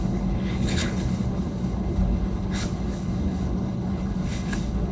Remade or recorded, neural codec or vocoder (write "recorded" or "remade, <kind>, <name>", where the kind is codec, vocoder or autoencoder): remade, codec, HILCodec